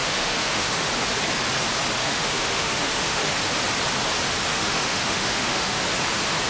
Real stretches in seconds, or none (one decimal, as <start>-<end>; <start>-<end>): 0.9-2.0; 3.3-4.5; 5.8-6.5